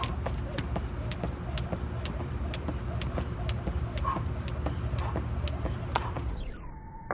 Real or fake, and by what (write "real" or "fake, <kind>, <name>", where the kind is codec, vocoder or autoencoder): real